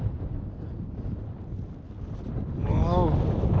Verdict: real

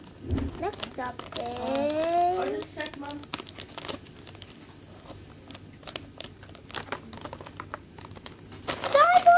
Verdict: real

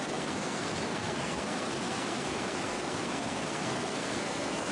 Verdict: fake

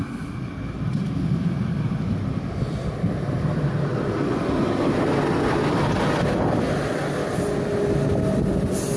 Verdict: real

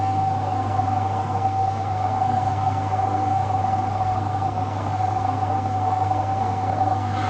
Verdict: fake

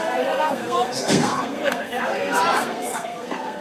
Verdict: fake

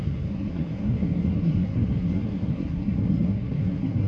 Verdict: fake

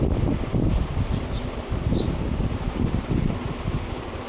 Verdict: real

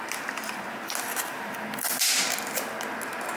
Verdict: real